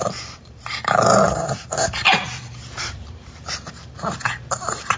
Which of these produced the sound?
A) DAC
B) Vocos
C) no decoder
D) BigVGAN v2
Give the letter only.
D